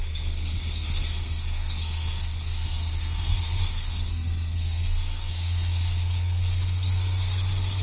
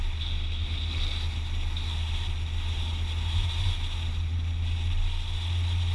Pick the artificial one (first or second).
first